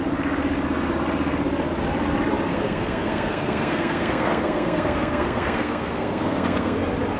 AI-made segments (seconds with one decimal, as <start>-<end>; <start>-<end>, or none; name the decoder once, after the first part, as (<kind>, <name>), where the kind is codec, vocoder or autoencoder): 2.5-6.8 (codec, SNAC)

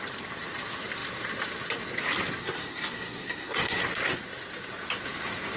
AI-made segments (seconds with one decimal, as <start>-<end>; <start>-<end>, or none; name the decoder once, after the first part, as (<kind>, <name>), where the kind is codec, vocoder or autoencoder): 2.4-3.8 (codec, SNAC)

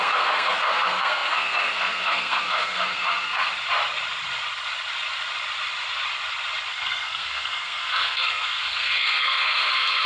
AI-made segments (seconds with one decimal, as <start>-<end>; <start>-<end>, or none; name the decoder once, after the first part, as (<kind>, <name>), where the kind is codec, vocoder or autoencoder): 0.0-3.5 (codec, SNAC); 6.7-10.1

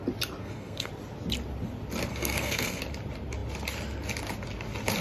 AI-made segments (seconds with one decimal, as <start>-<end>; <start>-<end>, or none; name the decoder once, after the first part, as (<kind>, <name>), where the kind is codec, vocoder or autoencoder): 0.4-0.9 (codec, SNAC); 2.1-2.8

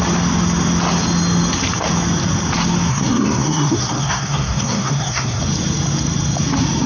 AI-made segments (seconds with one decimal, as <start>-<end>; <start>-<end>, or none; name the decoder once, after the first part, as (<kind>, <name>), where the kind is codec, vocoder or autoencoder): 2.9-5.4 (codec, SNAC)

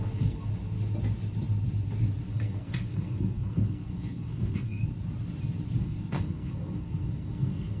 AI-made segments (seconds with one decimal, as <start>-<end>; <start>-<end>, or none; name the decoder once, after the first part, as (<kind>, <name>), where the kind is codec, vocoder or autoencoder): 0.0-0.5 (codec, SNAC); 2.3-4.8; 5.8-7.8

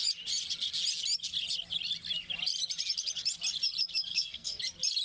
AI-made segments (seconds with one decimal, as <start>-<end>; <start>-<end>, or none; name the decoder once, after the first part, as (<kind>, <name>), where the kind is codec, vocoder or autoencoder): 4.1-4.6 (codec, SNAC)

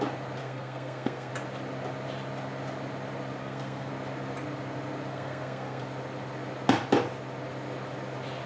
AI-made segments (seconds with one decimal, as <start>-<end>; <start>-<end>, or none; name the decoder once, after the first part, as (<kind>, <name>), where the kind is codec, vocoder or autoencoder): 0.4-1.3 (codec, SNAC); 3.4-3.9; 5.1-5.8